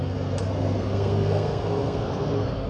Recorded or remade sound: remade